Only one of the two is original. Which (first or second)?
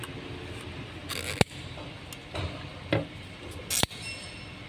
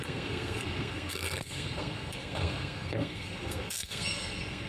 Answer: first